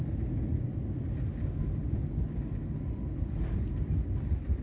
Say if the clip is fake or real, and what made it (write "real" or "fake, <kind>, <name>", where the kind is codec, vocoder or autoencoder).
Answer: real